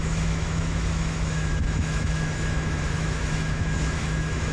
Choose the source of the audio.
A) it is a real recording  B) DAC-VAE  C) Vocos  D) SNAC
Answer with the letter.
B